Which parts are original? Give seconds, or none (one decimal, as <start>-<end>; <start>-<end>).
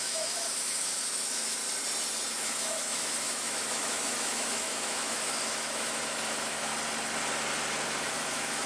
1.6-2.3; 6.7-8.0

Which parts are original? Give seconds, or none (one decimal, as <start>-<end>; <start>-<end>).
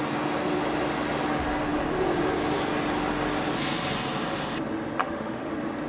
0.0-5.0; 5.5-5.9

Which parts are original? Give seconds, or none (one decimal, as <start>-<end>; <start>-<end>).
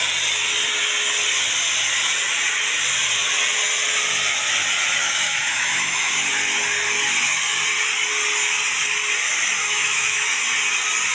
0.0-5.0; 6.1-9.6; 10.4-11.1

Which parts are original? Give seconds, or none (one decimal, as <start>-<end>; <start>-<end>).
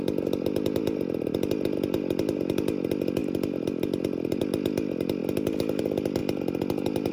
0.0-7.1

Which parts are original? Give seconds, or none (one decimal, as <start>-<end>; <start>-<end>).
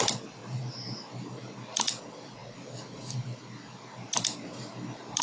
0.0-5.2